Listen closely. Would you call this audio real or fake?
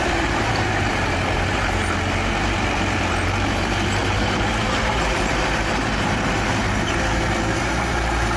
fake